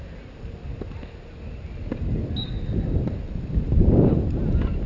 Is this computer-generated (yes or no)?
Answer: no